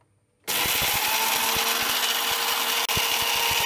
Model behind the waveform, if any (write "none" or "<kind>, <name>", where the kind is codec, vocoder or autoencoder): none